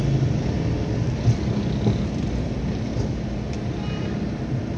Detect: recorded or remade recorded